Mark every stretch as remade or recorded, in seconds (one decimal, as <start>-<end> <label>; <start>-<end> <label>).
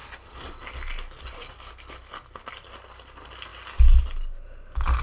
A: 0.0-5.0 recorded